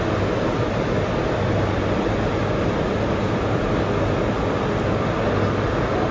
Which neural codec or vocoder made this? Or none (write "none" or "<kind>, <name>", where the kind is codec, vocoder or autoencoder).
none